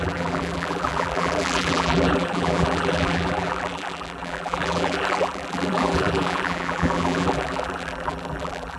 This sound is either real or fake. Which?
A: fake